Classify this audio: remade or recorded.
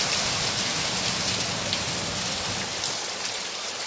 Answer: recorded